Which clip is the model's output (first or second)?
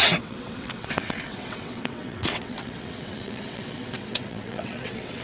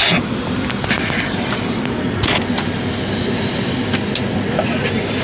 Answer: first